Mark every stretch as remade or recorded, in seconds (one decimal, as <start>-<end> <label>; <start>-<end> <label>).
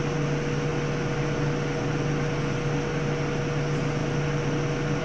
0.0-5.0 recorded